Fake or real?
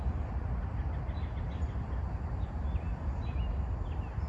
real